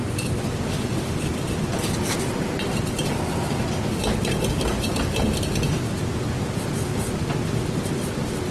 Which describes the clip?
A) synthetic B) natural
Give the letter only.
B